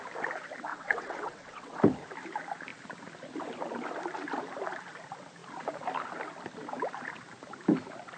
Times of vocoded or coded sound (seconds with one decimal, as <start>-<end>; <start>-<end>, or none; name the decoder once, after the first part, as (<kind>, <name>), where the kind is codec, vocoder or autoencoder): 0.7-1.8 (vocoder, WaveNeXt)